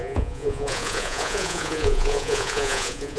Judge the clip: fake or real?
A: fake